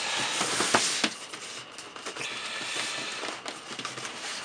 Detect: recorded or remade recorded